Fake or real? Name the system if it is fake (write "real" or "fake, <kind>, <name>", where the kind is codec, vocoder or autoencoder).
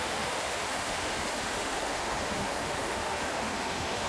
fake, autoencoder, DAC-VAE